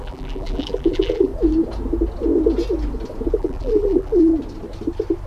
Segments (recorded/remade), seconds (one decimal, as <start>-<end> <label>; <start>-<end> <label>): 0.0-1.3 remade; 1.3-3.3 recorded; 3.3-4.3 remade; 4.3-5.3 recorded